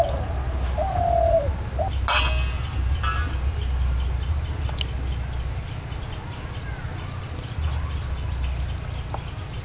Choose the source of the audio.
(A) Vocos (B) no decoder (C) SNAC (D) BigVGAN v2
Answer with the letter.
B